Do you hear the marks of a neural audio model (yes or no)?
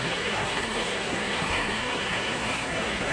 yes